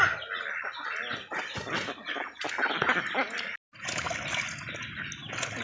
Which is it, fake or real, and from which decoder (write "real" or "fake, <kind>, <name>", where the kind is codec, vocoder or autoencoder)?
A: real